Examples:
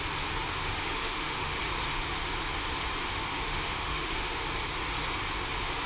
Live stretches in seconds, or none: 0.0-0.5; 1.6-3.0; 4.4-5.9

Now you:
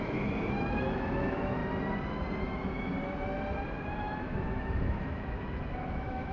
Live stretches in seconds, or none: 1.6-2.4; 2.9-3.8

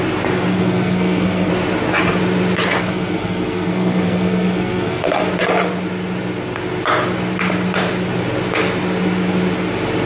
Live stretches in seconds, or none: 0.0-0.5; 1.5-2.8; 5.2-10.1

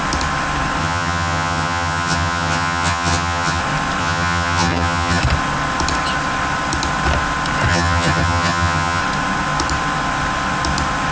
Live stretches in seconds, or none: 0.0-0.8; 3.6-4.0; 5.2-7.7; 9.0-11.1

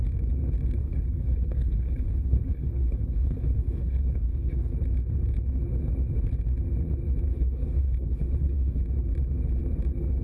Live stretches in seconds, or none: 0.0-0.8; 4.7-7.3; 8.8-10.2

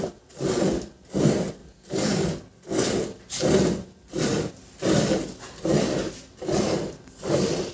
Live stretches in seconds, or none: 0.0-7.7

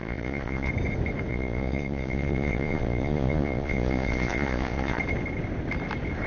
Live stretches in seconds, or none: 0.7-1.3; 5.0-6.3

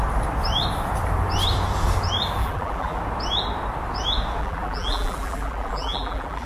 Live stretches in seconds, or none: 0.0-2.4; 3.0-4.4